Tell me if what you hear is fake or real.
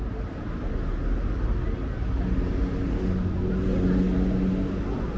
real